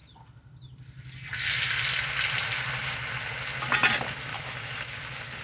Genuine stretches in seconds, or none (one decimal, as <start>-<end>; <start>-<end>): 0.0-4.3; 5.0-5.4